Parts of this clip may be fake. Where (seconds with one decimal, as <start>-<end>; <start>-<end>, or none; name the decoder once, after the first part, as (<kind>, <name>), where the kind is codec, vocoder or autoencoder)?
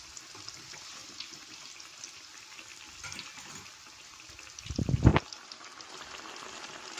2.7-3.5 (vocoder, BigVGAN v2); 5.1-5.9